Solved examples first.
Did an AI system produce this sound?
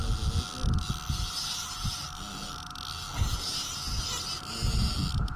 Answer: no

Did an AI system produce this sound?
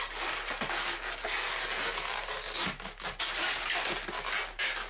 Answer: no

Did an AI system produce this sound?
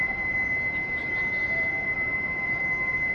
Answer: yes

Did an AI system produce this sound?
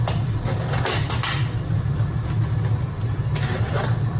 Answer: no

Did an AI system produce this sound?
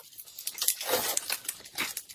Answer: no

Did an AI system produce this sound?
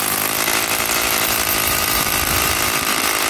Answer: yes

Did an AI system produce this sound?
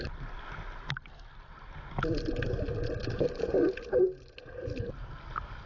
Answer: no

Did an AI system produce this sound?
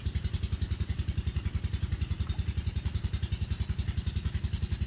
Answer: no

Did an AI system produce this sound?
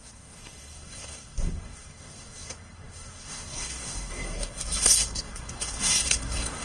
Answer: yes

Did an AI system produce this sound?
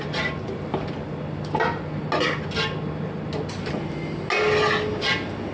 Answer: no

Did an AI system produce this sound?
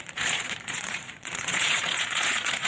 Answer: yes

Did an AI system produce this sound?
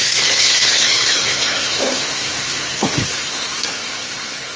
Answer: yes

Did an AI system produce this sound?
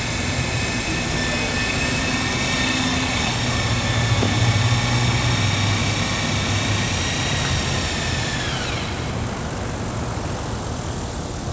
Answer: no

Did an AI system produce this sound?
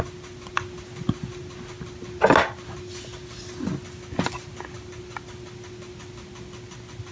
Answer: no